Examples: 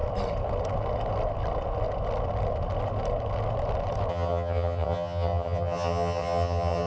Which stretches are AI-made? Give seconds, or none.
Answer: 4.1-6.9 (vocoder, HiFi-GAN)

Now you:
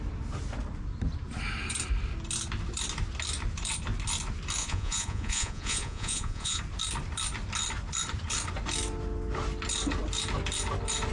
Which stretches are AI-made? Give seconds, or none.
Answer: 4.6-6.6 (vocoder, Vocos)

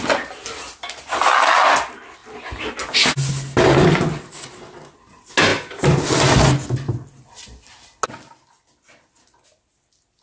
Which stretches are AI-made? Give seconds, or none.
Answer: none

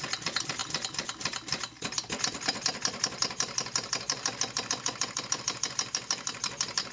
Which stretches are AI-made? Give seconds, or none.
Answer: 0.0-6.9 (vocoder, BigVGAN v2)